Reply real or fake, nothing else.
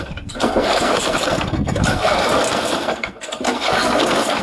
fake